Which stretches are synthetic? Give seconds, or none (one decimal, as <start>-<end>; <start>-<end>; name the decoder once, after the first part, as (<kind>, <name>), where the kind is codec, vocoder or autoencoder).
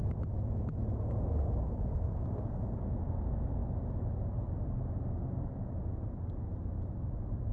none